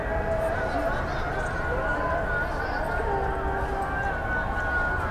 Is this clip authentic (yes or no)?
yes